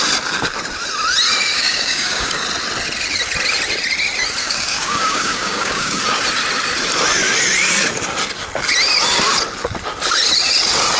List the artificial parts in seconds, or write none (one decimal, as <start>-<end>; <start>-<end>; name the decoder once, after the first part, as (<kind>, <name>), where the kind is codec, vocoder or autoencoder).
1.5-2.3 (codec, DAC); 4.4-6.0